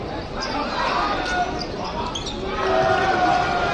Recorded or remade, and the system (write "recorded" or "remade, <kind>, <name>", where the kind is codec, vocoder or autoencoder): recorded